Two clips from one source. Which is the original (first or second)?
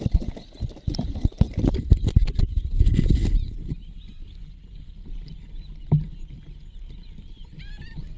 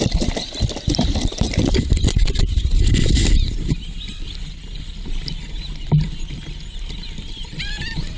first